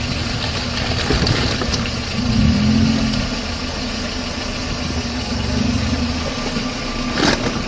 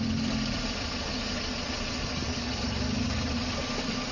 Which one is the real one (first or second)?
first